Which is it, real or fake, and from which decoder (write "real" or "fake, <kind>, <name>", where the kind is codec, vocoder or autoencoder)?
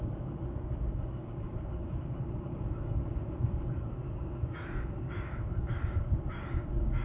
fake, codec, DAC